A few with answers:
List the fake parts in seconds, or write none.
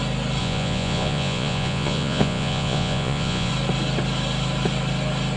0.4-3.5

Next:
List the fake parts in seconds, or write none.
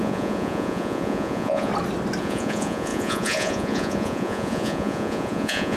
0.0-1.7; 2.2-5.8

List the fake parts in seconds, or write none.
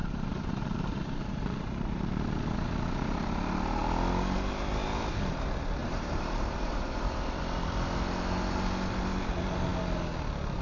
0.0-2.1; 5.8-7.4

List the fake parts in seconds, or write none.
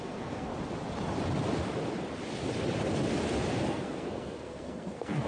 0.0-0.5; 3.7-5.3